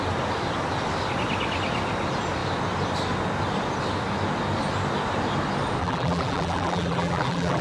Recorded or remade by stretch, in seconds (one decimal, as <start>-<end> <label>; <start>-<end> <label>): 0.0-5.8 recorded; 5.8-7.6 remade